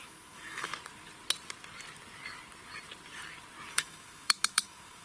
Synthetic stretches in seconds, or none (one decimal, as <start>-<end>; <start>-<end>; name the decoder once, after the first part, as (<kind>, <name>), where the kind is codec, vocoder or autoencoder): 0.0-0.7 (autoencoder, DAC-VAE); 3.7-5.0